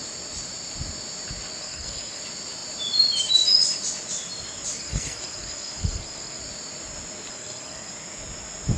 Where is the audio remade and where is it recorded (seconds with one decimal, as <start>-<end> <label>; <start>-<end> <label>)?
0.0-1.6 recorded; 1.6-2.2 remade; 2.2-4.8 recorded; 4.8-6.4 remade; 6.4-7.3 recorded; 7.3-7.9 remade; 7.9-8.8 recorded